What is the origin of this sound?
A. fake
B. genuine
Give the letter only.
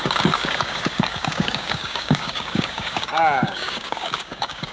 A